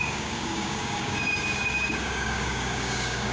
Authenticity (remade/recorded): remade